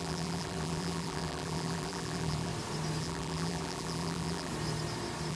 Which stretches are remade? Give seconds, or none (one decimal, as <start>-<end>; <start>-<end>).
0.0-2.5; 3.0-4.5